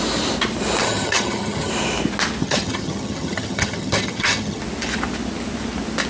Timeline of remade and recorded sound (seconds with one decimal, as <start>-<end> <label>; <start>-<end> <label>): 0.0-0.8 recorded; 0.8-1.7 remade; 1.7-2.4 recorded; 2.4-4.6 remade; 4.6-6.1 recorded

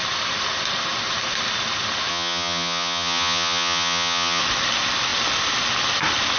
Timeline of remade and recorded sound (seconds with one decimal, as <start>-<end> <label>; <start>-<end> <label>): 0.0-2.1 recorded; 2.1-4.4 remade; 4.4-6.4 recorded

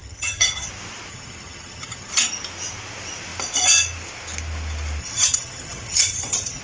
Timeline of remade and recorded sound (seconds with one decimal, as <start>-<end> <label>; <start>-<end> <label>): 0.0-0.7 remade; 0.7-1.1 recorded; 1.1-2.1 remade; 2.1-5.0 recorded; 5.0-6.6 remade

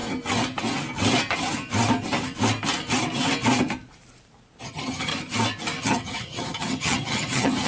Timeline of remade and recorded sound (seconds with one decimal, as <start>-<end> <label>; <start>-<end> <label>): 0.0-4.6 recorded; 4.6-5.1 remade; 5.1-5.8 recorded; 5.8-7.7 remade

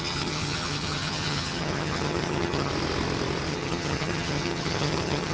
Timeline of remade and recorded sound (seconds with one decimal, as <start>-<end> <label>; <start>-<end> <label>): 0.0-2.7 remade; 2.7-3.5 recorded; 3.5-5.3 remade

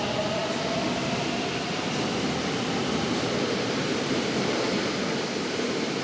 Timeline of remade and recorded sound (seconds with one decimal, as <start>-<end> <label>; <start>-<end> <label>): 0.0-6.0 recorded

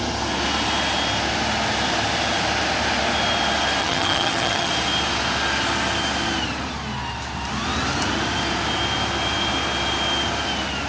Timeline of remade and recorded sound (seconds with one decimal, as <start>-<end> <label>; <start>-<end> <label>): 0.0-3.8 recorded; 3.8-4.7 remade; 4.7-10.9 recorded

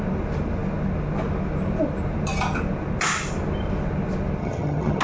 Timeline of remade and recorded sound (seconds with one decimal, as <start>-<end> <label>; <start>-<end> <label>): 0.0-4.4 recorded; 4.4-5.0 remade